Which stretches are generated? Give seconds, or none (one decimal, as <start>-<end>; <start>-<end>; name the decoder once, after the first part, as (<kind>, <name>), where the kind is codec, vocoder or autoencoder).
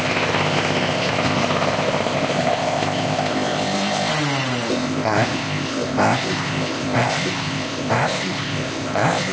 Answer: 0.0-4.1 (codec, ZipCodec); 4.7-9.3